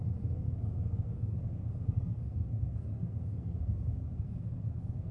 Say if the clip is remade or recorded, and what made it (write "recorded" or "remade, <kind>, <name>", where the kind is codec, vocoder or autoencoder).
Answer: remade, codec, SNAC